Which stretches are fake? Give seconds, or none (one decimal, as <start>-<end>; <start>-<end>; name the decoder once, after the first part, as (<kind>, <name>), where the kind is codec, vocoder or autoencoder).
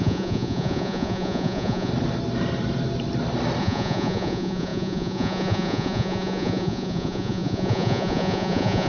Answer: 0.0-1.9 (vocoder, Vocos); 3.6-8.9